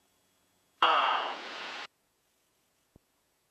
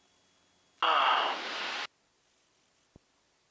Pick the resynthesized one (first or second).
first